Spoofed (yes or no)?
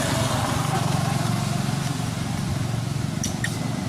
no